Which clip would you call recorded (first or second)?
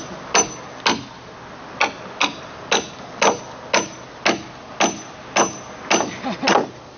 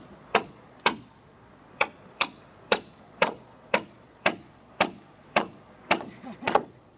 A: first